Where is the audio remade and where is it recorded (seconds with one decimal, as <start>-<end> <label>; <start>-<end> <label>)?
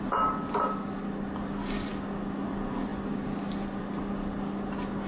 0.0-5.1 recorded